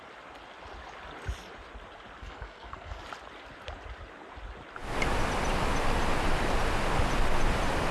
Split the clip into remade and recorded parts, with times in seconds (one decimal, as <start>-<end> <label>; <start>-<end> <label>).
0.0-2.2 recorded; 2.2-3.0 remade; 3.0-7.9 recorded